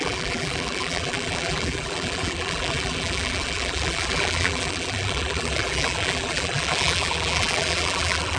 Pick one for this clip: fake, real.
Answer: fake